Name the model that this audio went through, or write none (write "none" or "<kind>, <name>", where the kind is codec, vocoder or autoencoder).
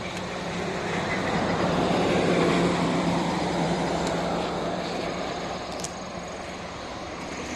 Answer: vocoder, BigVGAN v2